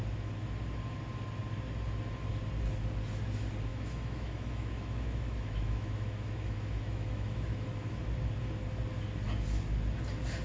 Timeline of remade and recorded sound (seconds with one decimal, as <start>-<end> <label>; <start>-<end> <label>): 0.0-3.7 recorded; 3.7-8.0 remade; 8.0-10.4 recorded

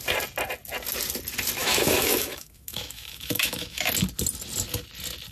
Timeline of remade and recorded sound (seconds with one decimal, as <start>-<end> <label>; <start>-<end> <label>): 0.0-1.6 recorded; 1.6-3.9 remade; 3.9-5.3 recorded